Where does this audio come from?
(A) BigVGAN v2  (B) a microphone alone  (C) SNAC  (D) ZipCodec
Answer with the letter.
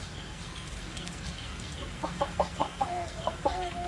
C